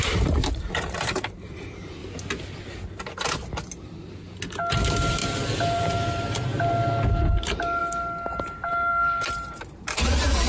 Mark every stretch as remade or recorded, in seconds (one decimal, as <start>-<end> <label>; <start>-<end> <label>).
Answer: 0.0-2.0 remade; 2.0-4.8 recorded; 4.8-5.2 remade; 5.2-5.8 recorded; 5.8-6.5 remade; 6.5-7.3 recorded; 7.3-7.8 remade; 7.8-8.7 recorded; 8.7-10.5 remade